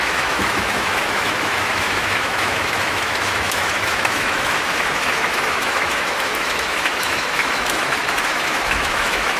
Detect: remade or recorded remade